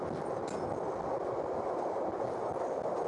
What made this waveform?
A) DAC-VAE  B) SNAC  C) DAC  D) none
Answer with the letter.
D